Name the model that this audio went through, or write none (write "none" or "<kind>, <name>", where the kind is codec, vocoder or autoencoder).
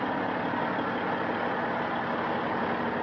none